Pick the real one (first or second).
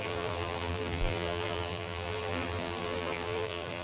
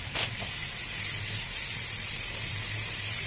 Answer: second